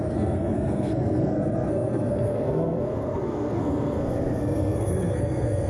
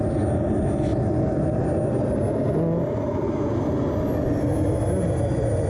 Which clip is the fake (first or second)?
first